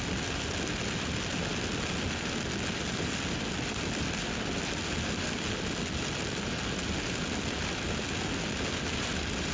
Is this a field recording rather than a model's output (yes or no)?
yes